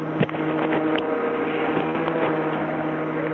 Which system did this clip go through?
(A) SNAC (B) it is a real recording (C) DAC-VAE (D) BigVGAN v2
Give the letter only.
B